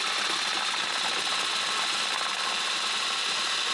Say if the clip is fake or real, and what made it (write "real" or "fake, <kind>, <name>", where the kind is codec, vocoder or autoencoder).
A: real